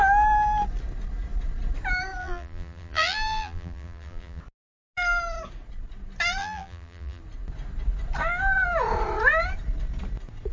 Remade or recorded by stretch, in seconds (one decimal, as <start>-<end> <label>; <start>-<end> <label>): 0.0-2.2 recorded; 2.2-4.4 remade; 4.4-6.4 recorded; 6.4-7.2 remade; 7.2-10.5 recorded